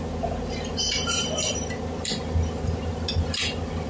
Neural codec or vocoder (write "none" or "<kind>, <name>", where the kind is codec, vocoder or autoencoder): none